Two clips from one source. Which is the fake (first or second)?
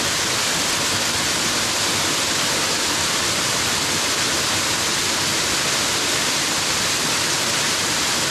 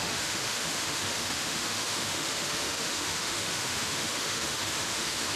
second